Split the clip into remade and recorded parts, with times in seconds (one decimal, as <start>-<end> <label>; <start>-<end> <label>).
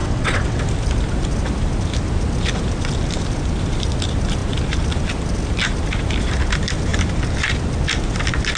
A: 0.0-0.6 remade; 0.6-8.6 recorded